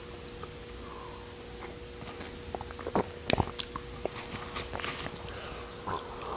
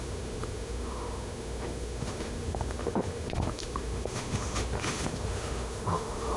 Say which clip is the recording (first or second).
first